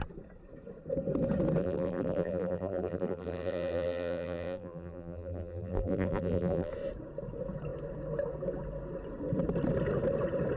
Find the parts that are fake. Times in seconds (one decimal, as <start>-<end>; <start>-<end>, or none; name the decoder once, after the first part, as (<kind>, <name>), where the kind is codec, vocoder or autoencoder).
1.6-6.7 (vocoder, BigVGAN v2)